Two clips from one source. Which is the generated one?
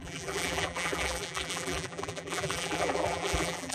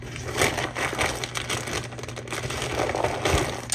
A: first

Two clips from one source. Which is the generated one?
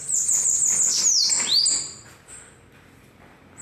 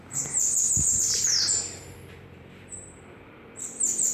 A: second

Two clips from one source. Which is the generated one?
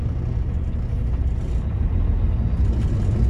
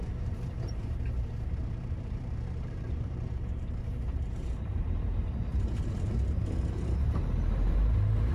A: second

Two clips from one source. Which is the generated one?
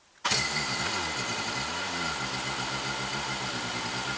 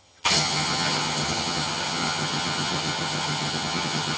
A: second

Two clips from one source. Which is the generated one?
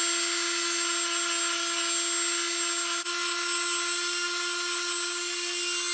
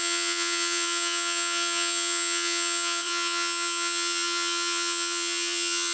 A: second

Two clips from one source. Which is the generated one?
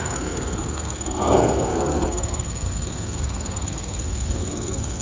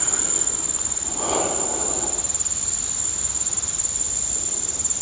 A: first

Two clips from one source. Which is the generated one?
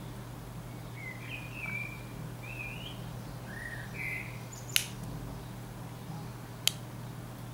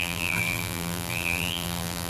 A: second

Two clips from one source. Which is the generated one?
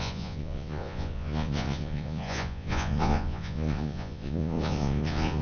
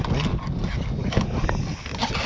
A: first